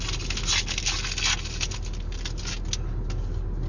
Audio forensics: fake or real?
real